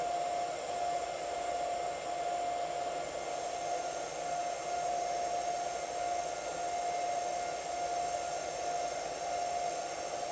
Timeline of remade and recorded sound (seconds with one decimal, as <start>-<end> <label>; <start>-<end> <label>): 0.0-10.3 recorded